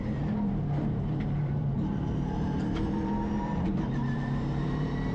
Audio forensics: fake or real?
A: fake